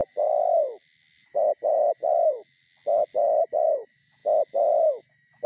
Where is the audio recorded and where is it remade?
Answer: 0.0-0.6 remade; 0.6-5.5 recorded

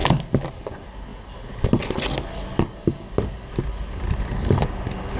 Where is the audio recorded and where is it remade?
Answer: 0.0-5.2 recorded

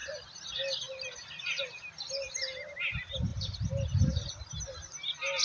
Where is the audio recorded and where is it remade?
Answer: 0.0-2.1 remade; 2.1-3.3 recorded; 3.3-4.1 remade; 4.1-5.4 recorded

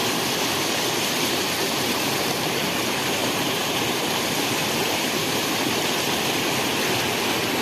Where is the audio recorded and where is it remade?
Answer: 0.0-3.2 recorded; 3.2-5.7 remade; 5.7-7.6 recorded

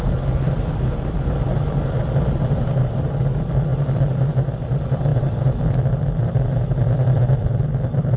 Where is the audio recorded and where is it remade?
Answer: 0.0-3.7 recorded; 3.7-4.3 remade; 4.3-5.1 recorded; 5.1-8.2 remade

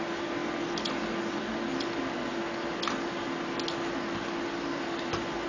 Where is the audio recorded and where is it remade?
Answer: 0.0-5.5 recorded

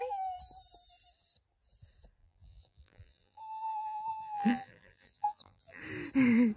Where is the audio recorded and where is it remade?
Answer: 0.0-2.2 recorded; 2.2-5.8 remade; 5.8-6.6 recorded